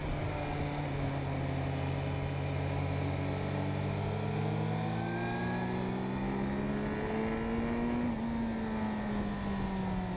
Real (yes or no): yes